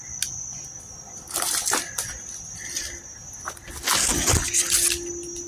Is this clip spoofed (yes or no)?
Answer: no